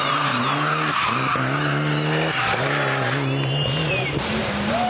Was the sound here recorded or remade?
recorded